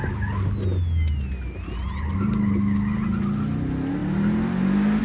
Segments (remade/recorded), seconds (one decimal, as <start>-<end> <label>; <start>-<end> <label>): 0.0-5.0 recorded